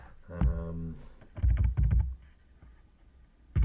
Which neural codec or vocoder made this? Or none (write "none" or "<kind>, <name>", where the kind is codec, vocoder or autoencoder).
none